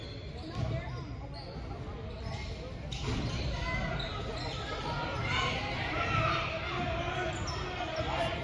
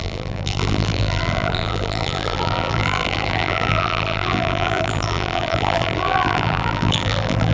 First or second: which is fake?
second